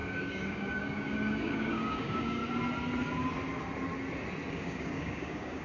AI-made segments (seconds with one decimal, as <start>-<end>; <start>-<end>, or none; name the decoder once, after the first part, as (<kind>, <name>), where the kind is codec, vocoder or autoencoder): 0.0-2.4 (codec, DAC); 4.5-5.6

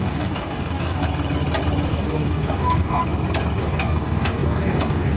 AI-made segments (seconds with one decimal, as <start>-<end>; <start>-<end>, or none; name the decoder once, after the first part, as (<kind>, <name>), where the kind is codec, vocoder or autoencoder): 0.0-1.0 (codec, DAC); 1.9-3.0; 3.6-5.2

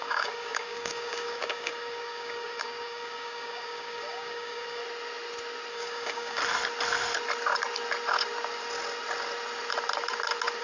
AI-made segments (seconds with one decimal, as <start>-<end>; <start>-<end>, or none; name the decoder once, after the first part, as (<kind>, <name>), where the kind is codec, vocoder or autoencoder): 0.0-4.8 (codec, DAC); 5.7-6.4

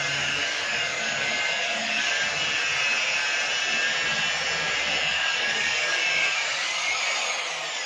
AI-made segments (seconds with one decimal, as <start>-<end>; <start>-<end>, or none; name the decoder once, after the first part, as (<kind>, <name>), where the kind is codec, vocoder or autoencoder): 0.0-2.1 (codec, DAC); 5.1-7.0

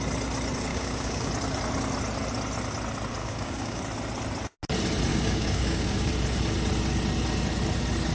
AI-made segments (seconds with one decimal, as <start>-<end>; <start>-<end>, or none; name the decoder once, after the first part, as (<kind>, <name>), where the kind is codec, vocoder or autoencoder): 0.7-1.3 (codec, DAC); 3.2-3.8; 5.1-6.1

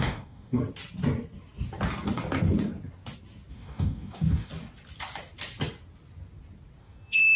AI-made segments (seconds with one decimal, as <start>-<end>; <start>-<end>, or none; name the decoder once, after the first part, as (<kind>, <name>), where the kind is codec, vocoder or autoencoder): 0.0-0.6 (codec, DAC); 3.5-4.5; 6.8-7.4

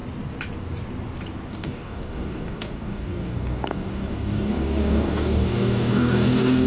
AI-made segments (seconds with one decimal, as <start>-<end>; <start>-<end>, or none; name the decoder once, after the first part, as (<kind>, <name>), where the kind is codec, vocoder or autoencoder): 1.5-6.7 (codec, DAC)